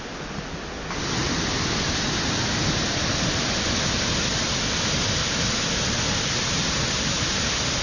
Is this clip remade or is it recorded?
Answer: recorded